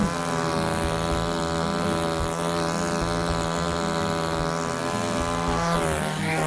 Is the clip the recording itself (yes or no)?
yes